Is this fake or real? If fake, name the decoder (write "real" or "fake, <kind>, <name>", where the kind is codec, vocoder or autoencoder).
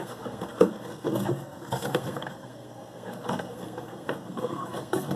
fake, codec, SNAC